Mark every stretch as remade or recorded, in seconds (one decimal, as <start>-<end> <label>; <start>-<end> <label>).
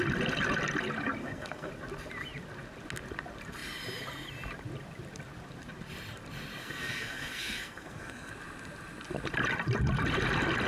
0.0-1.2 recorded; 1.2-1.7 remade; 1.7-6.6 recorded; 6.6-8.3 remade; 8.3-10.7 recorded